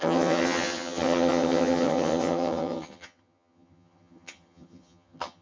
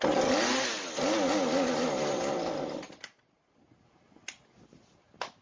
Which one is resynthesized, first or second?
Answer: first